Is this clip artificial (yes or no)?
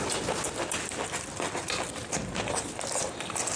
no